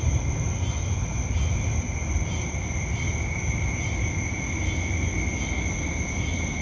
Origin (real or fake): real